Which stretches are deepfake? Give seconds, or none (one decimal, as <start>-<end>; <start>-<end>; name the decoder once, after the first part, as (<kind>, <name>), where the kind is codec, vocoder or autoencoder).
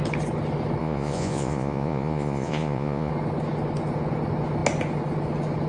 0.8-3.1 (vocoder, Vocos)